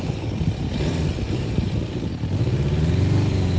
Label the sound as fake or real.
real